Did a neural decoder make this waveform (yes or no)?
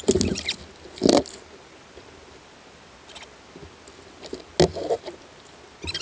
no